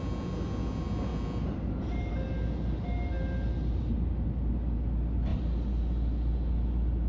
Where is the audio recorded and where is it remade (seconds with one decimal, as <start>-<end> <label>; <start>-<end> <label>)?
0.0-7.1 recorded